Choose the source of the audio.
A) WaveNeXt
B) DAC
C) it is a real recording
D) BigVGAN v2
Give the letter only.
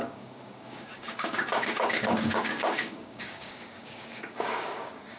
B